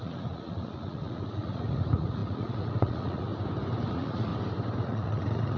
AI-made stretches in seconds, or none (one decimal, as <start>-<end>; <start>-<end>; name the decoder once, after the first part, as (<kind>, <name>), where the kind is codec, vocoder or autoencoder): 0.0-3.3 (vocoder, Vocos); 3.9-4.3; 4.8-5.6